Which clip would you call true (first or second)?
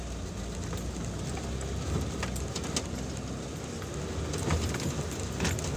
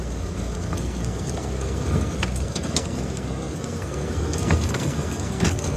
first